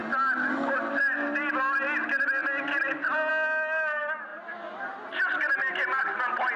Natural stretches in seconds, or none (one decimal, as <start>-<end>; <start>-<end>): 0.0-2.4; 3.3-4.3; 5.7-6.6